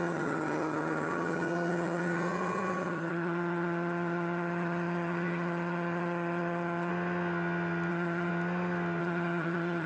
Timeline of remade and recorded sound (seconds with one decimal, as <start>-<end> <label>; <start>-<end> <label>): 0.0-6.9 remade; 6.9-7.9 recorded; 7.9-8.3 remade; 8.3-9.0 recorded; 9.0-9.9 remade